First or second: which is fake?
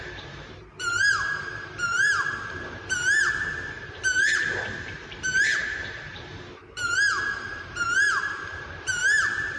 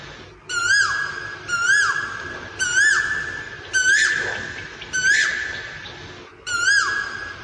first